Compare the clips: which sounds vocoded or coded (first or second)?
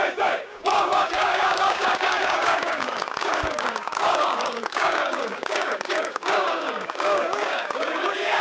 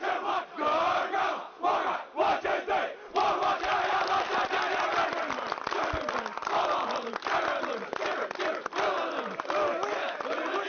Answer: first